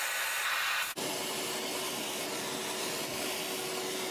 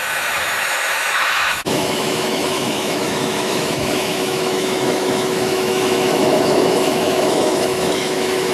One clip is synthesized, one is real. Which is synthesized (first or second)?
second